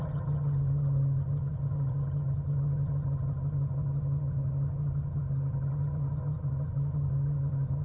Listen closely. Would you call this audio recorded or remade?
remade